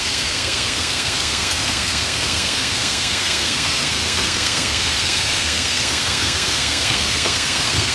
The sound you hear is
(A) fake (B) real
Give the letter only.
A